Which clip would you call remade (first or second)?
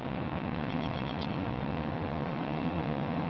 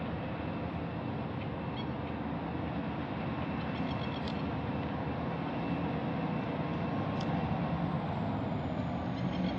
first